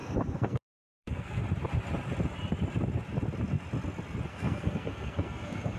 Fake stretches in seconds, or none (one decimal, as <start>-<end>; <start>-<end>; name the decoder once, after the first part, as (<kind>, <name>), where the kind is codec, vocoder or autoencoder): 0.0-1.4 (codec, SNAC); 4.3-5.8